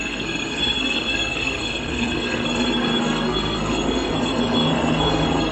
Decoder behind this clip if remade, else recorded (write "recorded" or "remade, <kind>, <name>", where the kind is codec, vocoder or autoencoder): remade, codec, SNAC